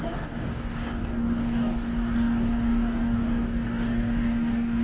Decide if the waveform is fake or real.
fake